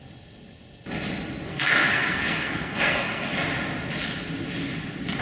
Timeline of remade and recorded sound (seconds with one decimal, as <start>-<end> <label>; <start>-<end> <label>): 0.0-1.5 recorded; 1.5-3.3 remade; 3.3-5.2 recorded